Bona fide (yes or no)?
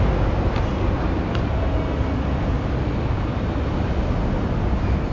yes